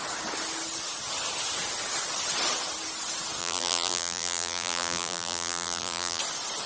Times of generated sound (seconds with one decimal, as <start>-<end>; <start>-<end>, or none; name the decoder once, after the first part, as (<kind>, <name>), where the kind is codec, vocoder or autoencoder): 3.4-6.2 (vocoder, BigVGAN v2)

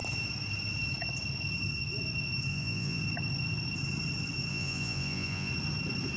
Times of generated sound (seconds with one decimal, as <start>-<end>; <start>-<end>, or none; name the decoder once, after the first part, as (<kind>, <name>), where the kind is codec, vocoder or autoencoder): 2.5-3.0 (vocoder, Vocos); 4.5-5.5

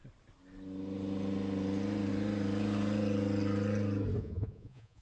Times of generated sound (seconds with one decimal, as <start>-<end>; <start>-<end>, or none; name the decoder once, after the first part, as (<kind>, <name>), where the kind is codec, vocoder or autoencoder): 4.2-5.0 (vocoder, Vocos)

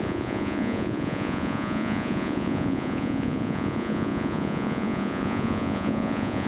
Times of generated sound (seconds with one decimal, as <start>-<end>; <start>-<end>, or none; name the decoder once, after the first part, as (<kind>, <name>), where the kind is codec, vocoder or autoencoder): 0.0-6.5 (vocoder, Vocos)

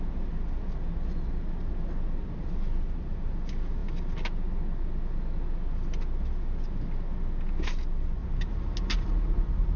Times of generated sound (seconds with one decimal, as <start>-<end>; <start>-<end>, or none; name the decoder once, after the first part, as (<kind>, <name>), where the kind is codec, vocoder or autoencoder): none